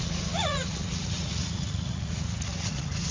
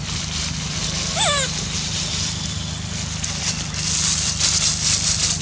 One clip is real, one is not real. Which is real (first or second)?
second